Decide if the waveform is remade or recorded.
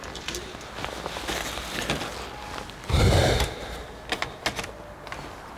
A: recorded